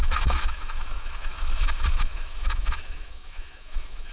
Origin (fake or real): fake